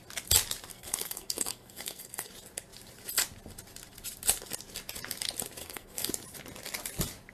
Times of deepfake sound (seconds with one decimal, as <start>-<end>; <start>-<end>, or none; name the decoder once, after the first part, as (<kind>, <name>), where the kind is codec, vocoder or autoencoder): 0.7-2.3 (codec, SNAC); 5.6-6.1